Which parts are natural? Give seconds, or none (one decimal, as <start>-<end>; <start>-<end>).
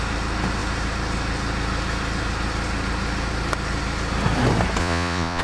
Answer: 0.0-4.8